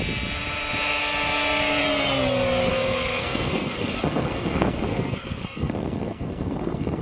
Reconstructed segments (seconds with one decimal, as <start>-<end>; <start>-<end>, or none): 2.7-7.0

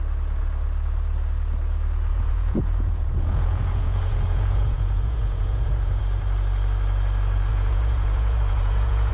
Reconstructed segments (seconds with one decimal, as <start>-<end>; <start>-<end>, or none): 2.1-6.0; 7.5-9.1

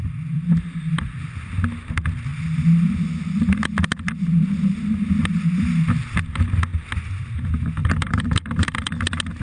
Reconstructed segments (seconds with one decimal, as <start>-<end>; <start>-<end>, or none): 7.8-8.7

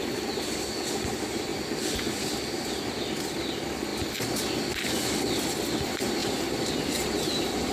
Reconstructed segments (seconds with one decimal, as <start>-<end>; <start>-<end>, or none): 6.2-7.7